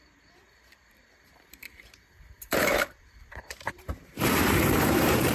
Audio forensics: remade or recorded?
remade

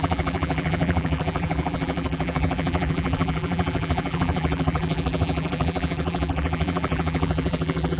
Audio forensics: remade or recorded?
remade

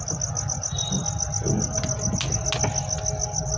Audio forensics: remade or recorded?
recorded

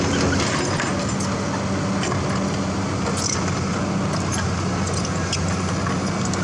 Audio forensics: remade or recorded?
recorded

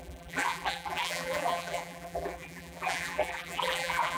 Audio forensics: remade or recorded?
remade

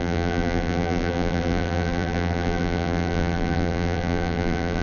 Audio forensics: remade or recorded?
remade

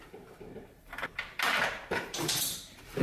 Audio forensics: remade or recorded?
remade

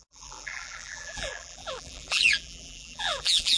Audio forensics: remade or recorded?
remade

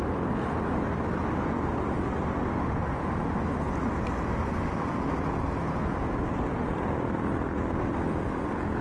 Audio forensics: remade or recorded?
recorded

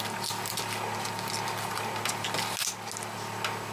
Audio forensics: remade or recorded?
recorded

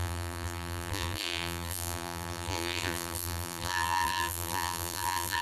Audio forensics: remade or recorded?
remade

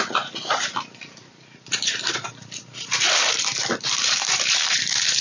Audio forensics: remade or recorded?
remade